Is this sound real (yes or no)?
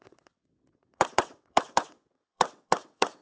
no